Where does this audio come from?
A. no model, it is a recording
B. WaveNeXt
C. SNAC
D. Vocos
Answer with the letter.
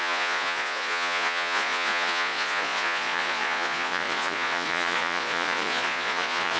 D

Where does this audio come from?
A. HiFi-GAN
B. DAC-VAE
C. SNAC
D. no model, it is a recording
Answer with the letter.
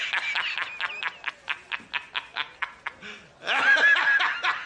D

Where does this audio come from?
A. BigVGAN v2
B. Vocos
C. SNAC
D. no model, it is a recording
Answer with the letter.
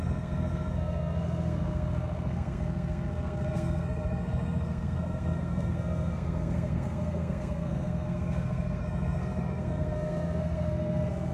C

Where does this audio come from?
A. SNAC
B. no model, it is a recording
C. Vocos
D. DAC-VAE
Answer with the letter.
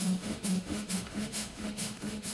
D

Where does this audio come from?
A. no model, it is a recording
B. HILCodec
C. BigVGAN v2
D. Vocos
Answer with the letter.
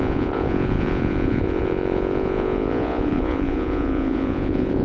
D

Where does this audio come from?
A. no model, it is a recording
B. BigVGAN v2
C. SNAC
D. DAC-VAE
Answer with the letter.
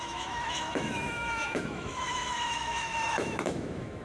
D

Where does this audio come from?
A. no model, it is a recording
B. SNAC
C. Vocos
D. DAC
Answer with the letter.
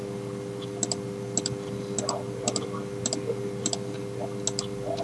A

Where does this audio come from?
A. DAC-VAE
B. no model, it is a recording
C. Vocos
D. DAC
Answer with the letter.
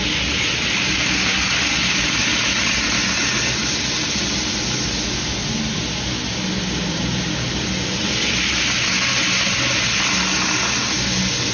B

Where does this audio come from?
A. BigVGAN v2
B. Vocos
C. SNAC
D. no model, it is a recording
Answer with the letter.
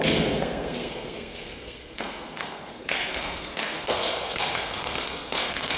C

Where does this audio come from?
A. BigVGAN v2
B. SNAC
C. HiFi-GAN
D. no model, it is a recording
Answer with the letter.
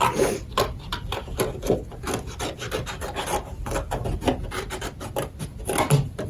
D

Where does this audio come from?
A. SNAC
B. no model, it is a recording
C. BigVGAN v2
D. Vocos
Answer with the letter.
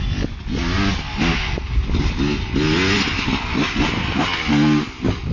B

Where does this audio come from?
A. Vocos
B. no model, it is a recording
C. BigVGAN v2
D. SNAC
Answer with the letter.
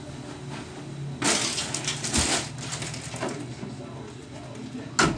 B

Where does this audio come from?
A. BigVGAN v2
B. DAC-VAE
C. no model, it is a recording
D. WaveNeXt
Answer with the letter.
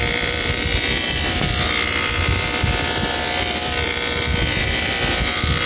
A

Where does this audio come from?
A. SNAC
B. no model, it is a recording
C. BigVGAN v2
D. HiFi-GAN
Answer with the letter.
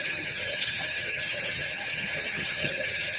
D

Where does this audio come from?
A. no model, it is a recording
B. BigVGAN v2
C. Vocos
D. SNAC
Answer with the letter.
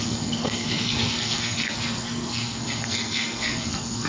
D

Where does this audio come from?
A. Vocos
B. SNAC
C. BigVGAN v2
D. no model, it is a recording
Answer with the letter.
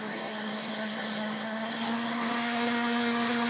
B